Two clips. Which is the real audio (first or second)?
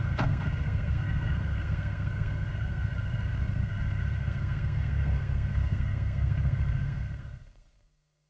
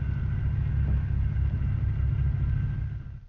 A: second